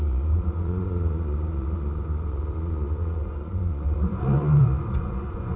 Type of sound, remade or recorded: remade